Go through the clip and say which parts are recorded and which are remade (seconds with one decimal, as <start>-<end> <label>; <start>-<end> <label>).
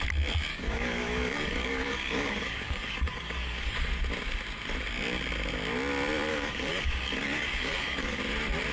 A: 0.0-0.5 recorded; 0.5-3.8 remade; 3.8-6.3 recorded; 6.3-8.2 remade; 8.2-8.7 recorded